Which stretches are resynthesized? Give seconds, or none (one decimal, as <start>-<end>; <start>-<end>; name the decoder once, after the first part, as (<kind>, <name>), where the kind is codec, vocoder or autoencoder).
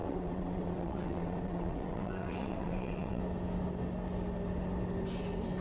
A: 0.0-3.2 (vocoder, WaveNeXt)